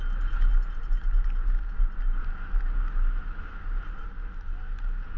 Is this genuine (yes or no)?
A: yes